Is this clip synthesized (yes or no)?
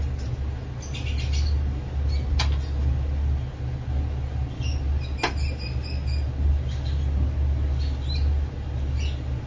no